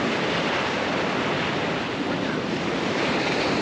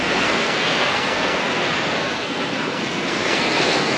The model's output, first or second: second